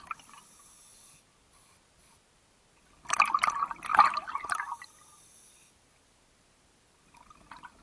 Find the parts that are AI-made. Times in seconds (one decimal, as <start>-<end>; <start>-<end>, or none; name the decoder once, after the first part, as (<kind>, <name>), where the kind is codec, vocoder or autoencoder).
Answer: none

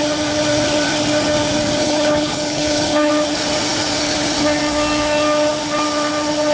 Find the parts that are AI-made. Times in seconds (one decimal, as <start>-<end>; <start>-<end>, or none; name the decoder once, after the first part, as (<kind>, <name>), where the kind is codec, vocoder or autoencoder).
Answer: 1.8-3.1 (codec, HILCodec)

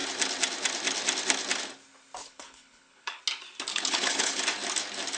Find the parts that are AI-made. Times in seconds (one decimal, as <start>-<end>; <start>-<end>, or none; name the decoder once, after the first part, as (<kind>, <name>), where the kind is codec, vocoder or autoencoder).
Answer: 2.2-3.2 (codec, HILCodec); 3.7-4.4

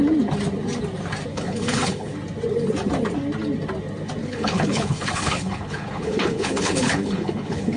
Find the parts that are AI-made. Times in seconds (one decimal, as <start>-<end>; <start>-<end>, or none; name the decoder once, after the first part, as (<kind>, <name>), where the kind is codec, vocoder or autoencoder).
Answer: 1.3-2.1 (codec, HILCodec); 4.2-7.8

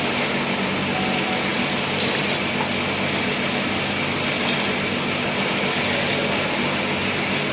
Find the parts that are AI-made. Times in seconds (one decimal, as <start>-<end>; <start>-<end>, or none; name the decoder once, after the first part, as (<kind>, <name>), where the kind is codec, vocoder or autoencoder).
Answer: none